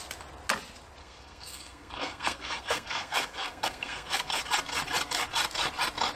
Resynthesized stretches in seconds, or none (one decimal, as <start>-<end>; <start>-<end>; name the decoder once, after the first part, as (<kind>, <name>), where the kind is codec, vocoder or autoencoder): 1.0-4.4 (codec, SNAC)